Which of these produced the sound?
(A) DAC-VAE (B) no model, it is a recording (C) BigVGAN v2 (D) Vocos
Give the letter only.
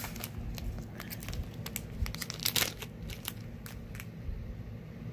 B